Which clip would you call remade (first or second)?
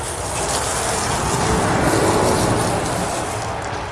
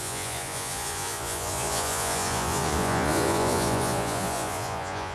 second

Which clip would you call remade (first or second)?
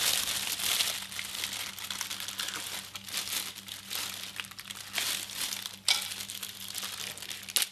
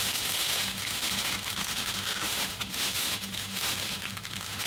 second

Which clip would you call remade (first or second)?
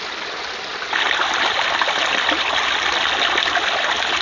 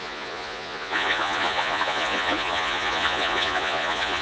second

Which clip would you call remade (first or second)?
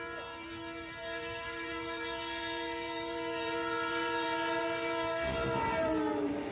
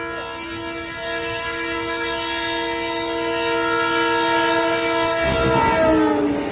first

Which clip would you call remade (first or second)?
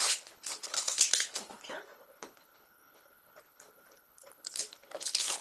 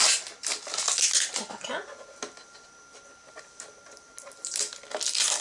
first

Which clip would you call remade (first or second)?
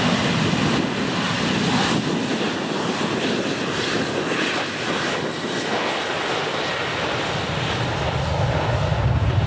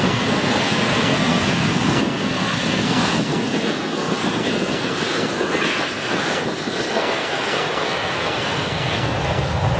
second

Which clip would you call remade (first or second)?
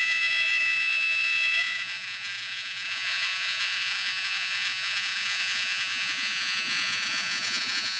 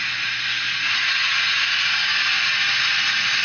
first